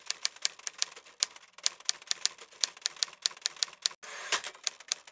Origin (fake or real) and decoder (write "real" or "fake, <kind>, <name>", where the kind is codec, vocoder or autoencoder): real